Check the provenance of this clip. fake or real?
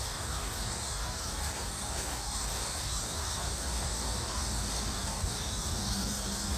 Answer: fake